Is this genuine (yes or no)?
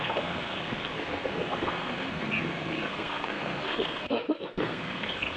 no